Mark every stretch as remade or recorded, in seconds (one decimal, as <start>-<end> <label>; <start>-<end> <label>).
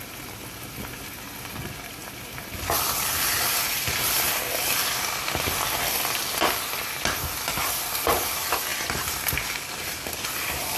0.0-10.8 recorded